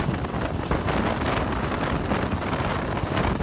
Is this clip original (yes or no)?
yes